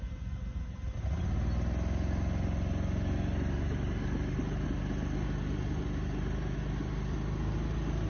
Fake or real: real